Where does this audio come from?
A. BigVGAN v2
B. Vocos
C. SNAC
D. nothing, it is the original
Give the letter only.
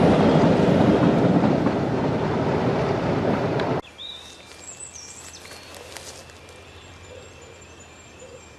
D